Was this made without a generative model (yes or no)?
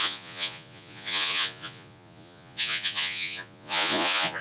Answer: no